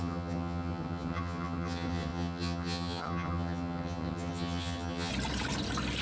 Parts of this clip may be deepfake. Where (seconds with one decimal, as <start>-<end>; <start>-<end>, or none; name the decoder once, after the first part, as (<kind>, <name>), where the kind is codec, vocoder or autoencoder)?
0.0-5.1 (vocoder, HiFi-GAN)